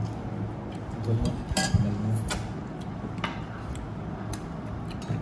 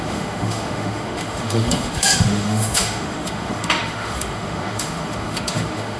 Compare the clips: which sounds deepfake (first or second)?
second